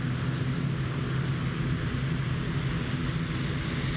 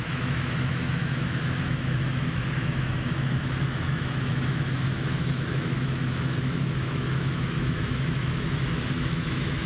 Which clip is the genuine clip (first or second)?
first